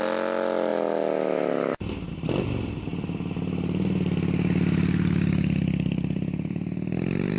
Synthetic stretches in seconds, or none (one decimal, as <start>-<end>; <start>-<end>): 0.0-0.7; 2.1-2.9; 5.9-7.4